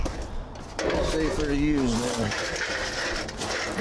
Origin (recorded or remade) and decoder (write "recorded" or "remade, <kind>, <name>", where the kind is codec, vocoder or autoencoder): recorded